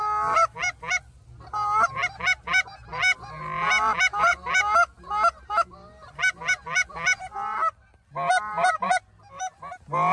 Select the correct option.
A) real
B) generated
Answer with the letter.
A